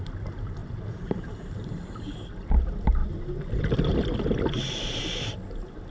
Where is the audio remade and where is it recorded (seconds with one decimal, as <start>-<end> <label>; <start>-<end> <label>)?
0.0-0.6 recorded; 0.6-2.1 remade; 2.1-5.9 recorded